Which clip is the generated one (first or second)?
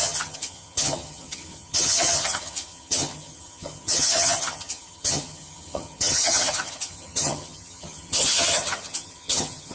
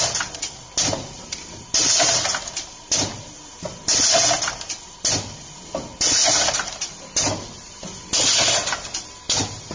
first